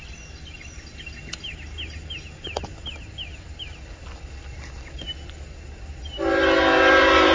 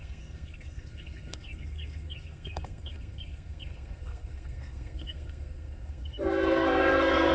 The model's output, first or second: second